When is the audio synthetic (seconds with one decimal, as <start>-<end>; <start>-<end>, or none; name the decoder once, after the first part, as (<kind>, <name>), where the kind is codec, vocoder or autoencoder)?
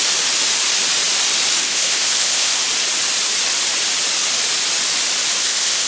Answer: 1.6-2.6 (codec, ZipCodec); 5.4-5.9